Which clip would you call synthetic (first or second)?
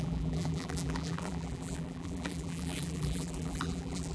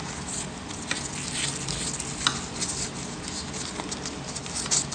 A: first